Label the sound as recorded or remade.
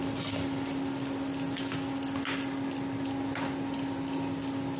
recorded